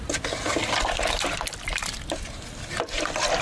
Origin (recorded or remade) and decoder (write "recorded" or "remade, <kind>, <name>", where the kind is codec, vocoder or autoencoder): recorded